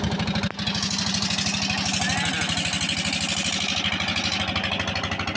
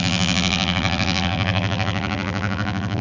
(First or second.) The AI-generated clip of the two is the second